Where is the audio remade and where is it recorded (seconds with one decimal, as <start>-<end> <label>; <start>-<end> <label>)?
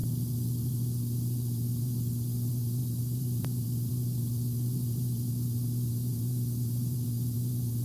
0.0-0.7 recorded; 0.7-7.8 remade